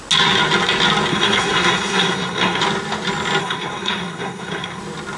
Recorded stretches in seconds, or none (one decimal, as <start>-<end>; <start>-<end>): 0.0-1.1; 2.6-3.4; 4.8-5.2